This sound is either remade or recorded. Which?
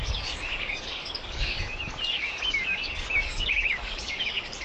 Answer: remade